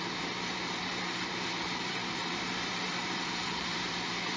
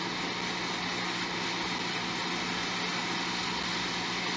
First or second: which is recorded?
second